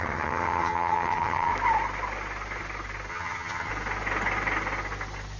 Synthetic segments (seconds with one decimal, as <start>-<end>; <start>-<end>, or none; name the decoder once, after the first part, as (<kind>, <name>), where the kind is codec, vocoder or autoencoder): 0.0-1.5 (vocoder, HiFi-GAN); 3.1-3.7